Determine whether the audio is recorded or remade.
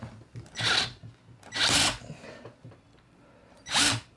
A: remade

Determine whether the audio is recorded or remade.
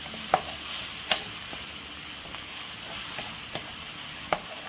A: recorded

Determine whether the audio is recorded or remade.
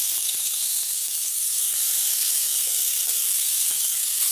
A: remade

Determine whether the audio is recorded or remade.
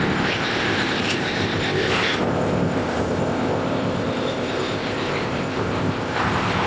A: remade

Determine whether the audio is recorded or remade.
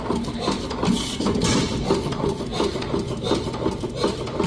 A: remade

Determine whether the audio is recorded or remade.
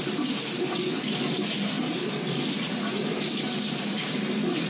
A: recorded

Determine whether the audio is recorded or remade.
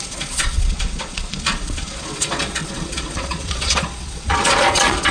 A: remade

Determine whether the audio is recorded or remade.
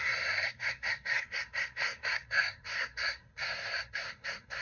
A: remade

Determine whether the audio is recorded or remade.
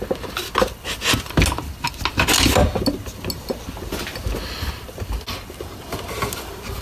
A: recorded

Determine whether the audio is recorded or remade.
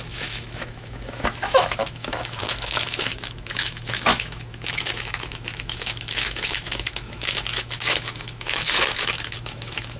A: remade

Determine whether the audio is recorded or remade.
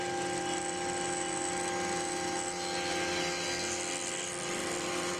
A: recorded